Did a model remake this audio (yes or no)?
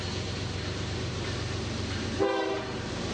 yes